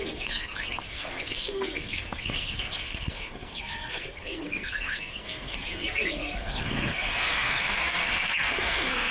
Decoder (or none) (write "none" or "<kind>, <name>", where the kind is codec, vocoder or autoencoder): codec, SNAC